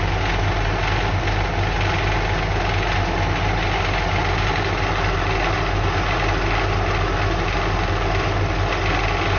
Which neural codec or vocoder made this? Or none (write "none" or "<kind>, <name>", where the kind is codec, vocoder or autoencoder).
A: none